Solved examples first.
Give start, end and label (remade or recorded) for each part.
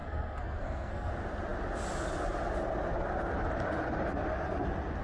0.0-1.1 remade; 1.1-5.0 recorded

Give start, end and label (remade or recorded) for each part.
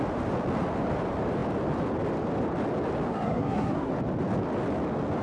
0.0-3.1 recorded; 3.1-3.9 remade; 3.9-5.2 recorded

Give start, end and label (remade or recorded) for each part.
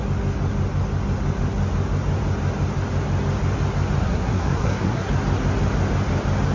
0.0-4.0 recorded; 4.0-5.1 remade; 5.1-6.5 recorded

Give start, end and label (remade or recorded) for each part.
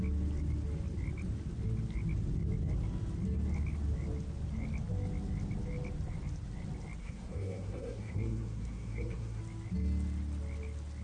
0.0-7.0 recorded; 7.0-9.4 remade; 9.4-11.0 recorded